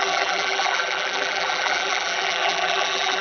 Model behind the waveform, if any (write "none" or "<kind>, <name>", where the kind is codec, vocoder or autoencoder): vocoder, BigVGAN v2